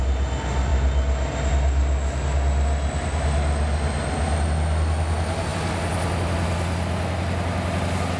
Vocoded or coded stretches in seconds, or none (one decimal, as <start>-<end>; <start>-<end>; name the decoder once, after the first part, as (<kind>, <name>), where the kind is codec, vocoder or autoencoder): none